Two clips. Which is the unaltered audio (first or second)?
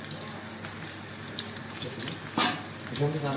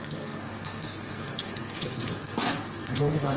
first